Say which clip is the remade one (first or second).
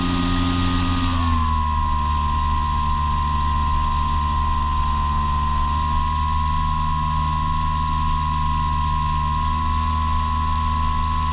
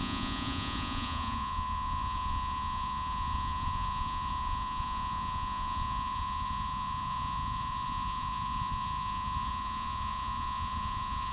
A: second